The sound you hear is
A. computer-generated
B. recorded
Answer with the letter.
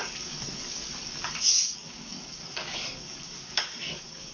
A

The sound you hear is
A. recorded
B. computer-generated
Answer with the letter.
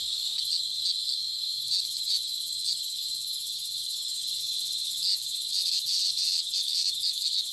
B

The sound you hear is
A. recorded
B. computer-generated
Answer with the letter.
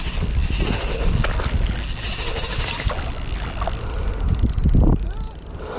A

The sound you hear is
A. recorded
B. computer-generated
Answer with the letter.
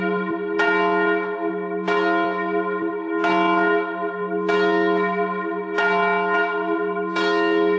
A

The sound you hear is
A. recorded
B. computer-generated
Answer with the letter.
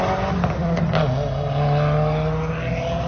A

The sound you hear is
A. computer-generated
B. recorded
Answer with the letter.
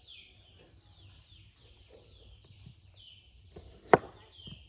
B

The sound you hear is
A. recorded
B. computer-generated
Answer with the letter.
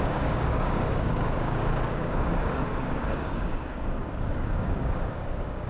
B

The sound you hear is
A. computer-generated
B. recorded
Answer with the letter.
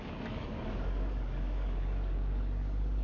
A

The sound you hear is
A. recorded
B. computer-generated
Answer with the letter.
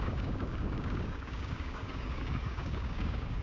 B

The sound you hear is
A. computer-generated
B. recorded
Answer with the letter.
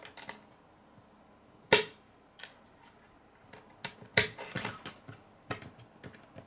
B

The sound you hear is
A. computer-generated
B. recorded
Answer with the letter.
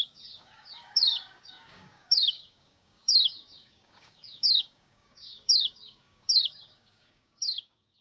A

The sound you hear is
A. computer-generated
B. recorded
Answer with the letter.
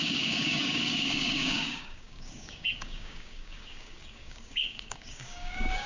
A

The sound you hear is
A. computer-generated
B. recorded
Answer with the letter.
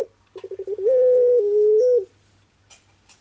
B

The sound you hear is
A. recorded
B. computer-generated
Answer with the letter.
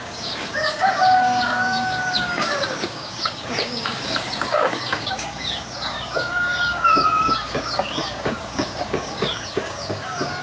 B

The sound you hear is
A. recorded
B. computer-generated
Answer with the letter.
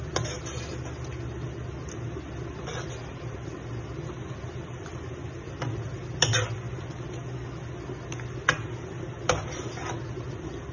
A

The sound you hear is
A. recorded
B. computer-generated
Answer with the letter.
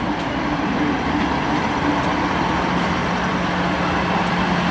A